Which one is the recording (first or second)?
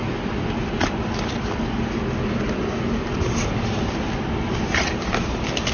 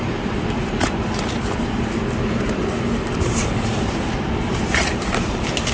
first